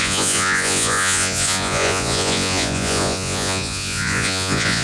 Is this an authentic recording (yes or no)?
no